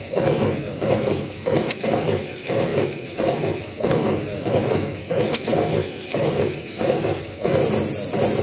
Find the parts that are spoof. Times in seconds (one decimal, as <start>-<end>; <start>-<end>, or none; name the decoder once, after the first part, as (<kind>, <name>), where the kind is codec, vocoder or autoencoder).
0.0-7.6 (codec, SNAC)